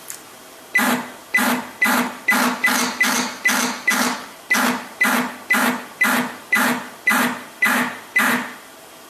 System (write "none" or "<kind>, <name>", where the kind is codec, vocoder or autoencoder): none